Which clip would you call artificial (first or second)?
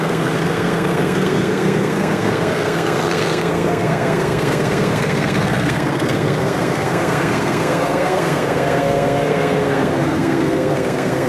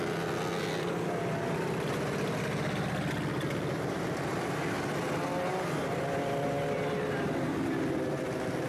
first